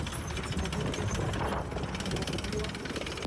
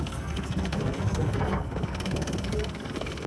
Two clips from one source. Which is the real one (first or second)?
first